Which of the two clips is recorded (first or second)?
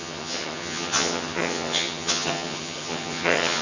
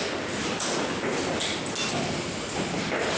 second